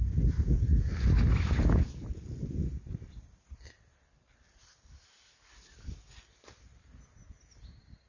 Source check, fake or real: real